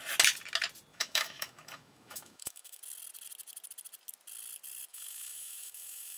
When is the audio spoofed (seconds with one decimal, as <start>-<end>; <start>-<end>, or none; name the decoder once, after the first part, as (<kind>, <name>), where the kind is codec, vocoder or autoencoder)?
0.9-2.8 (autoencoder, DAC-VAE); 4.9-6.2